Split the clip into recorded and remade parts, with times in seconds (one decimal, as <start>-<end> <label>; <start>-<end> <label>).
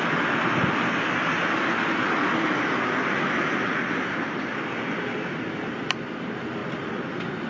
0.0-7.5 recorded